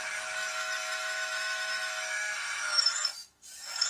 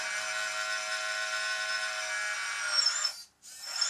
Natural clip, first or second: second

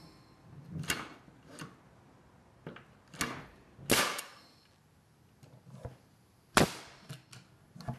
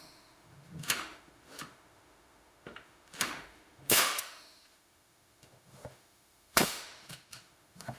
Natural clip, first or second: first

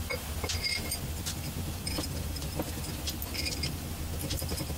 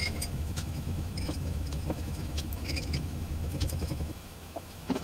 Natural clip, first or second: first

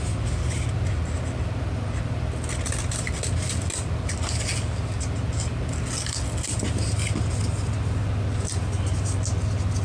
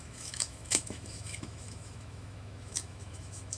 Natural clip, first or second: first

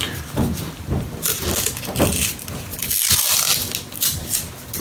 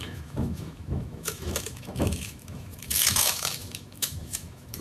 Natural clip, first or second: first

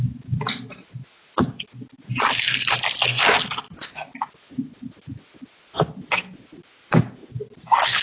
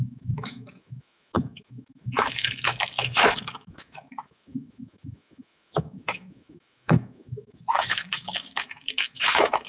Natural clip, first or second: first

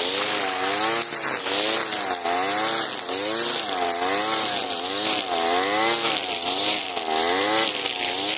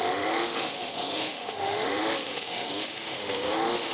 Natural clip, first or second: first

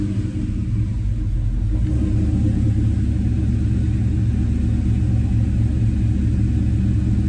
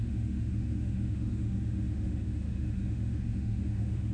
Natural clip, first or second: first